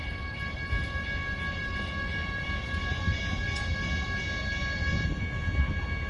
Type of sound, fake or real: real